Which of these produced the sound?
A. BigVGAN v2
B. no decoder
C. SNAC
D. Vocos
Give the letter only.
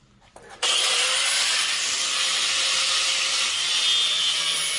B